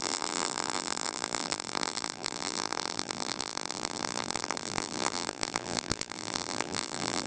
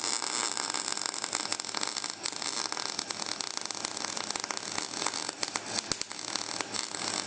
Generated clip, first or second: first